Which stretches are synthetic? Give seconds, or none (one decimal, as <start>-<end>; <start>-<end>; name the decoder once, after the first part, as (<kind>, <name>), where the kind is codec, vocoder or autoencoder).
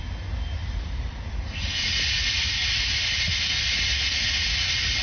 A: 0.6-2.5 (vocoder, BigVGAN v2)